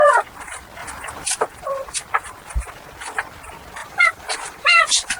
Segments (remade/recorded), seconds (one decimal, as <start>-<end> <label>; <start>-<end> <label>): 0.0-3.8 recorded; 3.8-4.8 remade; 4.8-5.2 recorded